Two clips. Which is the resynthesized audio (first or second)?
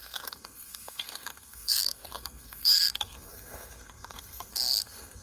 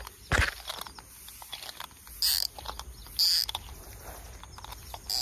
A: first